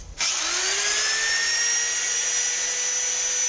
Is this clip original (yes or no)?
yes